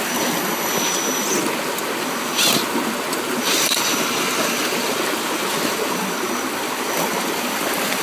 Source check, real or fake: real